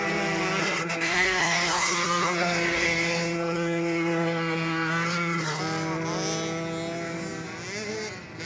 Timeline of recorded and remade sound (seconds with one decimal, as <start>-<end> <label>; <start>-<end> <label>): 0.0-0.6 recorded; 0.6-5.6 remade; 5.6-8.4 recorded